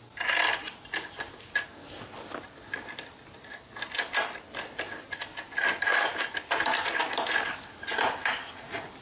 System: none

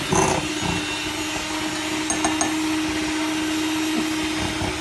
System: none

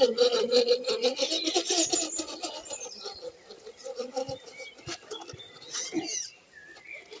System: none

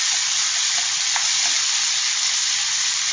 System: none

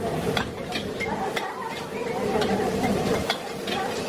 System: none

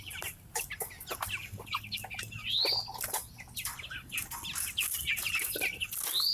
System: none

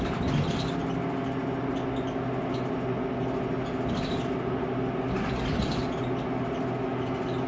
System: none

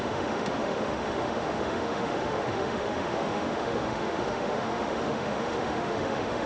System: autoencoder, DAC-VAE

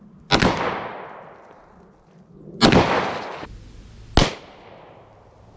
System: none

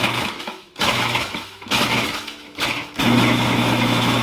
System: autoencoder, DAC-VAE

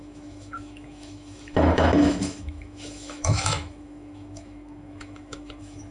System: autoencoder, DAC-VAE